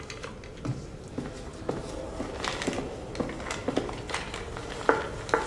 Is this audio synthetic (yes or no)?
no